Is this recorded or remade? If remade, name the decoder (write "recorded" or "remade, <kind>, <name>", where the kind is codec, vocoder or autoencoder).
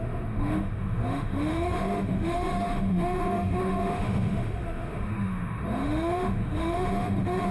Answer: remade, autoencoder, DAC-VAE